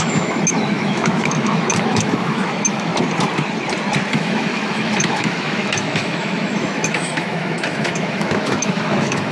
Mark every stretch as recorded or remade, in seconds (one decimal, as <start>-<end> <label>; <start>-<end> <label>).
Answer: 0.0-2.9 remade; 2.9-4.1 recorded; 4.1-9.3 remade